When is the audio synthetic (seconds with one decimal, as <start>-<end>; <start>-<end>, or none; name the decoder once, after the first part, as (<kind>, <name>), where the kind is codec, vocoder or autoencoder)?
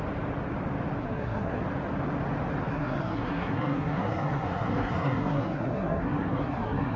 1.0-1.6 (codec, SNAC); 2.7-7.0